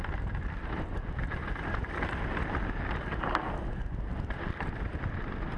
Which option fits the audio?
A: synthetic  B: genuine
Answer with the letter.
A